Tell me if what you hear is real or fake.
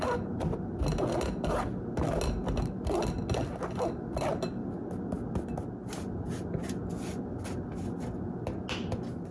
real